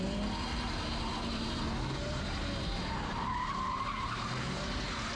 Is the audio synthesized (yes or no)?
yes